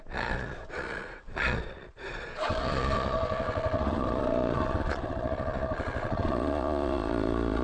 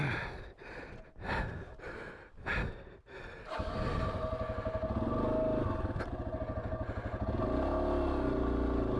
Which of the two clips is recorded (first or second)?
second